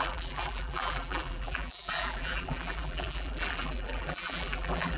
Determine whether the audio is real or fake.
fake